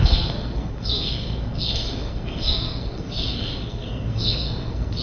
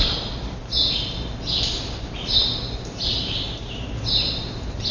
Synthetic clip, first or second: first